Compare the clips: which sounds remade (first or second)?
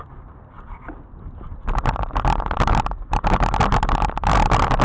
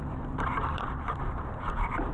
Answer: second